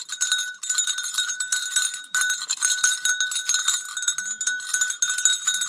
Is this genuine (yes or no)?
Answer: yes